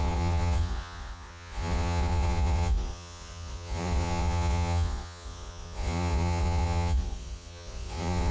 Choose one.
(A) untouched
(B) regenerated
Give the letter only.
B